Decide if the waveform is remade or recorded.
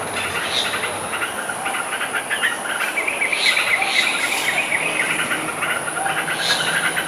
recorded